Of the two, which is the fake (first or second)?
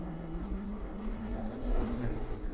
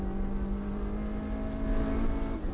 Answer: first